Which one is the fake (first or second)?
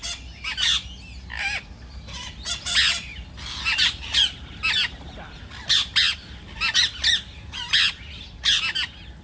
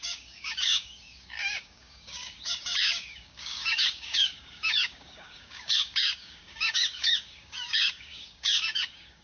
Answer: second